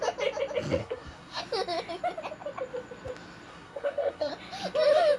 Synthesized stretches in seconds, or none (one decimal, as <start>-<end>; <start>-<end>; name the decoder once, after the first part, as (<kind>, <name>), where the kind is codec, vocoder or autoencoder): 0.8-1.4 (codec, SNAC); 3.5-4.3

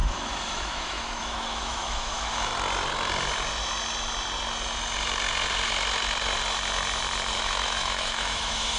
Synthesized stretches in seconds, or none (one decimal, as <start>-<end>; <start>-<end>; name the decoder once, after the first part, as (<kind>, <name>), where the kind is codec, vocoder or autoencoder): 0.0-2.5 (autoencoder, DAC-VAE); 7.4-8.8

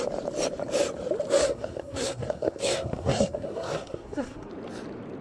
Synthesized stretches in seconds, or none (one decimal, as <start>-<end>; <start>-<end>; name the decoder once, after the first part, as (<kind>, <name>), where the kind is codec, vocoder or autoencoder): 1.4-4.5 (codec, SNAC)

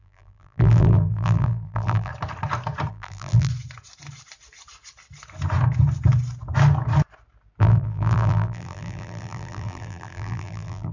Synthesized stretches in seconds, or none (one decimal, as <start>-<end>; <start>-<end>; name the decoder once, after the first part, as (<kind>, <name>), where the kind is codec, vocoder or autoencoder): 0.0-2.1 (vocoder, BigVGAN v2); 2.9-3.5; 7.6-10.9

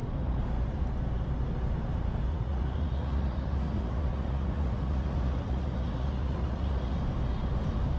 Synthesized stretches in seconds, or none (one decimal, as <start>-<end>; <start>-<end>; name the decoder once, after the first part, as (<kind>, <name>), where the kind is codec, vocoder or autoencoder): 2.3-7.0 (vocoder, Vocos)

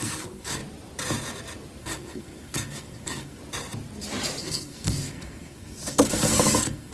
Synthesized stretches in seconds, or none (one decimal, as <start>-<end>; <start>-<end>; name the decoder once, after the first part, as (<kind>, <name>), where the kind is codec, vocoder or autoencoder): 0.0-0.6 (codec, SNAC); 1.8-3.4; 4.4-6.9

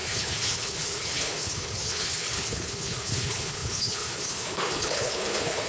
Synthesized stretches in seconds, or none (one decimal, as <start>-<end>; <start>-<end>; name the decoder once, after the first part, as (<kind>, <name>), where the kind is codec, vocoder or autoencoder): 0.0-5.7 (codec, HILCodec)

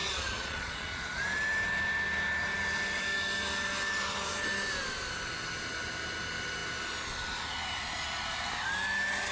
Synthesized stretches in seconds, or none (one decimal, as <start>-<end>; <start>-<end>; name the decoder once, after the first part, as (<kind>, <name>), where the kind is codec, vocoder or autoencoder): 0.0-1.2 (vocoder, Vocos)